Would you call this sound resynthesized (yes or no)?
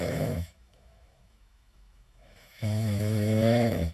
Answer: yes